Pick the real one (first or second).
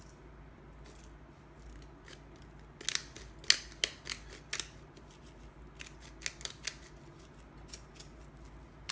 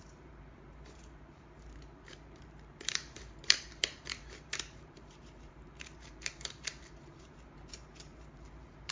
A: first